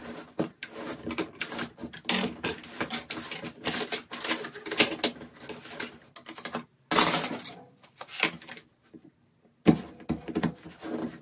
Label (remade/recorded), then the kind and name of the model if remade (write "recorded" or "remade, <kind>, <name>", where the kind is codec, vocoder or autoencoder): recorded